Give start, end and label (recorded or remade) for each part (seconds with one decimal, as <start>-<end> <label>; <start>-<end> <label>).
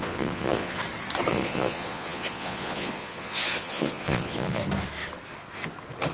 0.0-0.8 remade; 0.8-1.3 recorded; 1.3-4.6 remade; 4.6-6.1 recorded